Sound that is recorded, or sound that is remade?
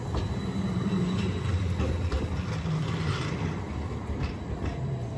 recorded